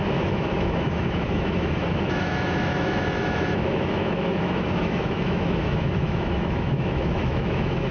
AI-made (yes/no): yes